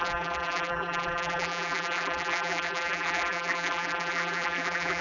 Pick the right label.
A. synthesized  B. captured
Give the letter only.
A